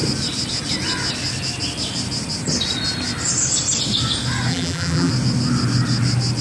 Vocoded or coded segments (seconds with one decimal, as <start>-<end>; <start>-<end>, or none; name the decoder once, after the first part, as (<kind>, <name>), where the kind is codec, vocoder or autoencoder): 4.5-5.1 (vocoder, BigVGAN v2)